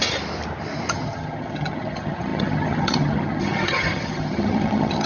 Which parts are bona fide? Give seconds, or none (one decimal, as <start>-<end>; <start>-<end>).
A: 0.0-0.9